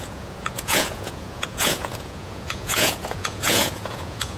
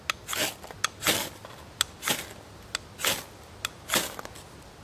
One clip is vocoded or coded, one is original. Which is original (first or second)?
second